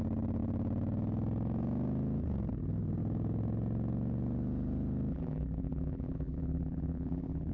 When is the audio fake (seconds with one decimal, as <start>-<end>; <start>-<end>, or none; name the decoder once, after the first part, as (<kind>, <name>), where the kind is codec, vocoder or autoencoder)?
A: 5.1-7.5 (vocoder, BigVGAN v2)